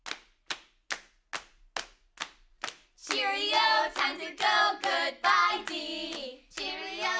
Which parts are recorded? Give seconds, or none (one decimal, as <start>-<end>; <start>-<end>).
0.0-7.2